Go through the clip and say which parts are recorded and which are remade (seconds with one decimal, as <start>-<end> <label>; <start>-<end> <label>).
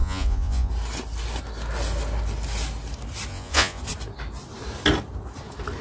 0.0-0.7 remade; 0.7-3.3 recorded; 3.3-3.8 remade; 3.8-5.8 recorded